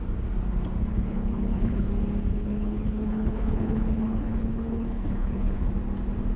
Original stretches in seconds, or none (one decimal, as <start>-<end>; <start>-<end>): 0.0-0.8; 1.9-2.3; 5.7-6.4